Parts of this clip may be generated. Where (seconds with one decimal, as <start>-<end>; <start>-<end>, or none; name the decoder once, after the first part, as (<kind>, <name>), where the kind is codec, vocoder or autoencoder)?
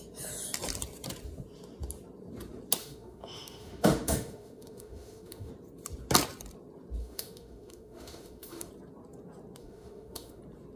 2.8-5.5 (autoencoder, DAC-VAE); 7.0-8.7; 9.6-10.4